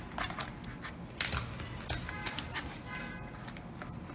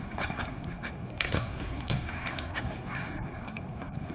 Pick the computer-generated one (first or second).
second